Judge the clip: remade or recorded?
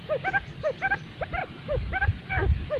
recorded